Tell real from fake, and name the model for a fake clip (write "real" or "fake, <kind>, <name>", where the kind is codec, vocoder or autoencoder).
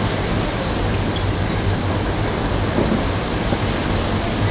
real